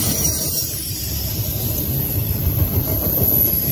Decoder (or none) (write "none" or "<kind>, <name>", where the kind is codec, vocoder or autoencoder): vocoder, BigVGAN v2